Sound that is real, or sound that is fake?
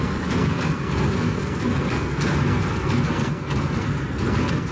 fake